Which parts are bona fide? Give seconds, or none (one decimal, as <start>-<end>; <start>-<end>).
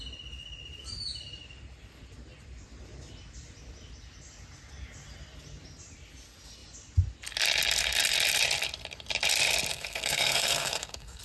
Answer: 0.0-9.7